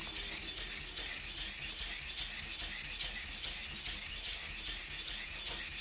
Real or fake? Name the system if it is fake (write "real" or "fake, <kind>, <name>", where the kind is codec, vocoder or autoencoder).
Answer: real